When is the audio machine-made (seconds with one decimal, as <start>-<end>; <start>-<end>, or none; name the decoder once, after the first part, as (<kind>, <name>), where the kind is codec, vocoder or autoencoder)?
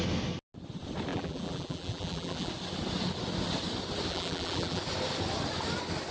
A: 1.1-2.5 (vocoder, BigVGAN v2); 4.1-4.8